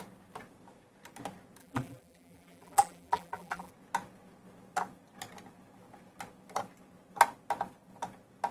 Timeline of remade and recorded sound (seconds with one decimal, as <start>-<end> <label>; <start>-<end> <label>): 0.0-1.6 recorded; 1.6-3.7 remade; 3.7-8.5 recorded